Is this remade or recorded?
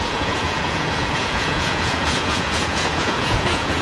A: remade